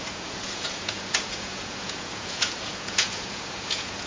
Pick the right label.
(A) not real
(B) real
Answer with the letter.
A